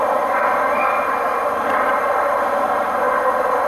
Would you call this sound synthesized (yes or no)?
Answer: no